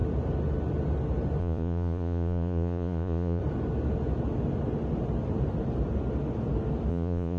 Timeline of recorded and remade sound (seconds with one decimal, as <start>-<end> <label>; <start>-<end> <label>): 0.0-1.4 recorded; 1.4-3.4 remade; 3.4-6.9 recorded; 6.9-7.4 remade